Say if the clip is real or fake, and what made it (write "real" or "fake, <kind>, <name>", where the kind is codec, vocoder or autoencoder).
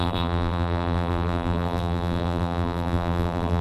fake, vocoder, BigVGAN v2